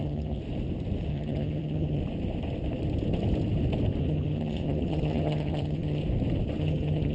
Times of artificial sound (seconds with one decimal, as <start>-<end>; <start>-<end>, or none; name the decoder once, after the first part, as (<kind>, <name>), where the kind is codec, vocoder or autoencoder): 0.0-0.4 (vocoder, HiFi-GAN); 1.1-2.0; 4.0-6.0; 6.6-7.1